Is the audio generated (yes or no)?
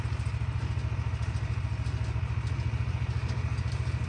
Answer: no